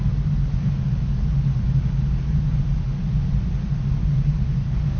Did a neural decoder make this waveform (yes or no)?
no